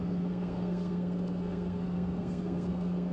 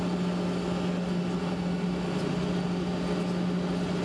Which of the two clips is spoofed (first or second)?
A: first